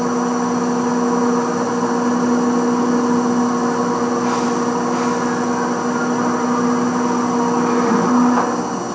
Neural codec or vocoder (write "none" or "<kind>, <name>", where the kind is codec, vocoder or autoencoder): none